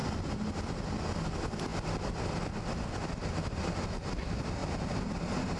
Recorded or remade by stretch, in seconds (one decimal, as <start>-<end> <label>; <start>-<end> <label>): 0.0-4.6 recorded; 4.6-5.6 remade